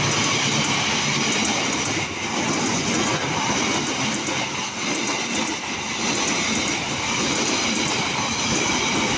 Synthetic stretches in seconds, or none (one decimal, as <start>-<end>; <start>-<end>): 2.7-3.2